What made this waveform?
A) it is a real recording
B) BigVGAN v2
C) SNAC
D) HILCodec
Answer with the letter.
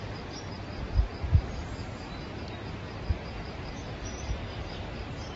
A